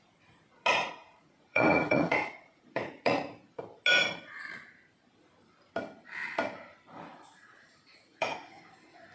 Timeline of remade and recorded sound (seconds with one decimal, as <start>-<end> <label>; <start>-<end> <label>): 0.0-0.7 recorded; 0.7-3.2 remade; 3.2-7.1 recorded; 7.1-8.6 remade; 8.6-9.1 recorded